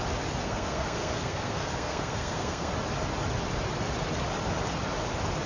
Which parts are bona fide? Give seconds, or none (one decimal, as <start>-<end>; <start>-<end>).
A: 0.0-0.4; 2.7-5.5

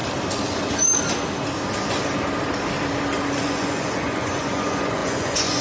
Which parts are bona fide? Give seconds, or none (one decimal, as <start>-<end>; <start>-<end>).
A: 0.0-3.4